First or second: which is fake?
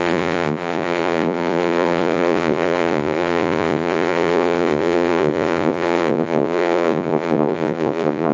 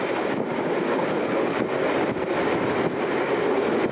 first